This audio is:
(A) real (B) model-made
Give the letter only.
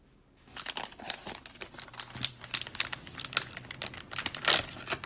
A